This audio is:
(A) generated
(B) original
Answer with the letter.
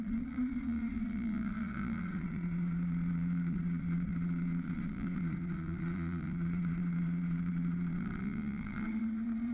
A